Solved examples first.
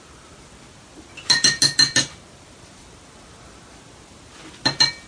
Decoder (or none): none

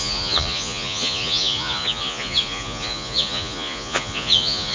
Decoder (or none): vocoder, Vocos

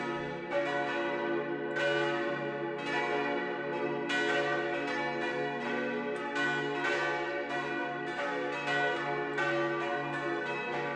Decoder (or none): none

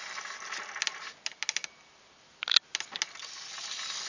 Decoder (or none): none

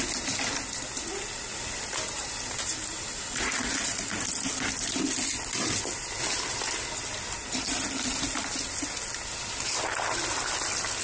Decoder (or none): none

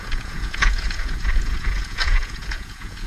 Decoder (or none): vocoder, Vocos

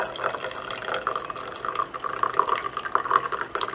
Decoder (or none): none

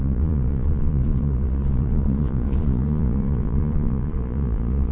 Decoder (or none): vocoder, Vocos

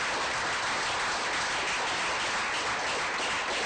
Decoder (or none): none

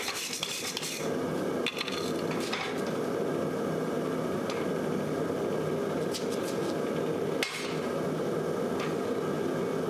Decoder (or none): none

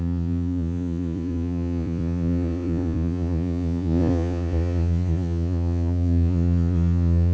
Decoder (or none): vocoder, Vocos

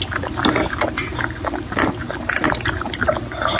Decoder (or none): none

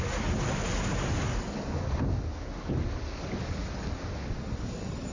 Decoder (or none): none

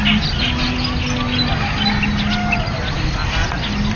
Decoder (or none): none